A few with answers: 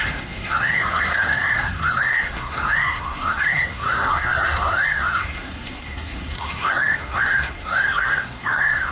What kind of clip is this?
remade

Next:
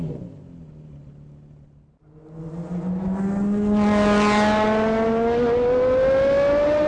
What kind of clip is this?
recorded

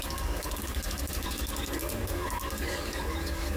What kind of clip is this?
remade